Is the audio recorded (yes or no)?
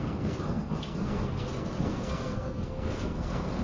no